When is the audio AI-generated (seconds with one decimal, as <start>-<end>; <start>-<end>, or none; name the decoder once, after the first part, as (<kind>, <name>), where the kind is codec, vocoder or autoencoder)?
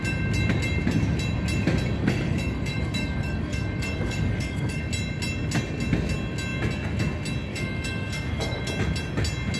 2.0-4.8 (codec, DAC); 7.5-8.6